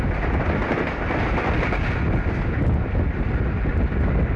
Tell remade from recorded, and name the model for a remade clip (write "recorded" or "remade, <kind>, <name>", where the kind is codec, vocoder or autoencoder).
recorded